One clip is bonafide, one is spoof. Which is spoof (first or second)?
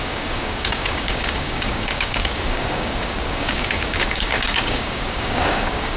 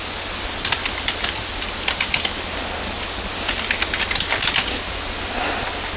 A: first